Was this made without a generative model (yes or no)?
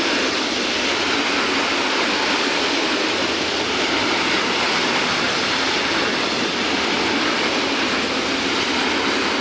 no